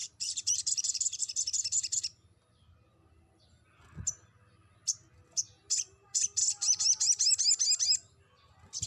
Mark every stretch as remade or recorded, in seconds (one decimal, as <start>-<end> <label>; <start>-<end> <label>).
0.0-1.2 remade; 1.2-8.9 recorded